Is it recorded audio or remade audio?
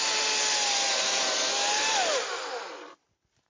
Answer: recorded